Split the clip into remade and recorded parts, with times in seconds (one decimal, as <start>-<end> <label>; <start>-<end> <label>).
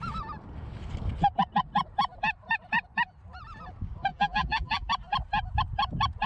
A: 0.0-4.1 recorded; 4.1-4.9 remade; 4.9-6.3 recorded